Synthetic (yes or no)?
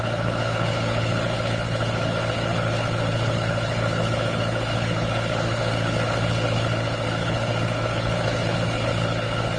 yes